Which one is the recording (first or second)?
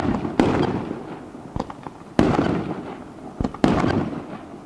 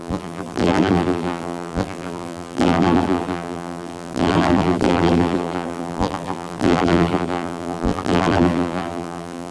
first